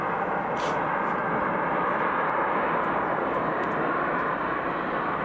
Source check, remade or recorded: recorded